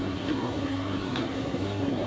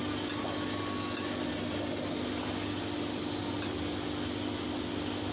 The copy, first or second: first